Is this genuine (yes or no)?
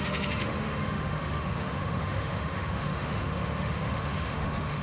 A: no